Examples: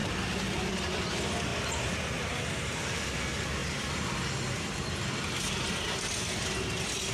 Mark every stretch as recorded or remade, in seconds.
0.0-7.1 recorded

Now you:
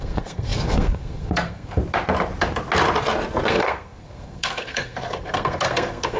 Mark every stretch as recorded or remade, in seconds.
0.0-1.8 remade; 1.8-3.5 recorded; 3.5-6.2 remade

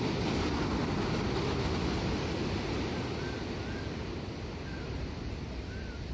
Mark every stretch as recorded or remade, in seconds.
0.0-6.1 recorded

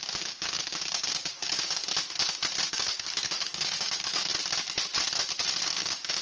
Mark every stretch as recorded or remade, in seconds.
0.0-1.9 remade; 1.9-2.7 recorded; 2.7-4.3 remade; 4.3-5.6 recorded; 5.6-6.2 remade

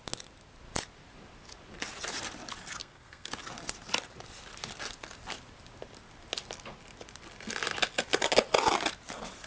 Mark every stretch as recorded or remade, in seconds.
0.0-2.8 recorded; 2.8-3.3 remade; 3.3-9.5 recorded

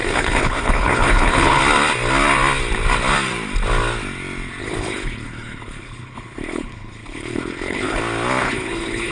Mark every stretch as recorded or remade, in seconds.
0.0-1.6 remade; 1.6-4.6 recorded; 4.6-8.0 remade; 8.0-8.4 recorded; 8.4-9.1 remade

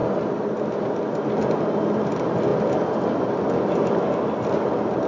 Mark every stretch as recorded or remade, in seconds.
0.0-5.1 recorded

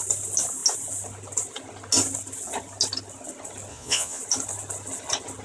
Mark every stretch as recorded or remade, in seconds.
0.0-3.7 recorded; 3.7-4.2 remade; 4.2-5.4 recorded